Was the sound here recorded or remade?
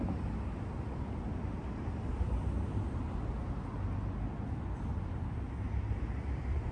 recorded